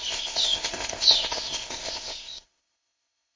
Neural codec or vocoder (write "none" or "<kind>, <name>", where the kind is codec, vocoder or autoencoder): codec, ZipCodec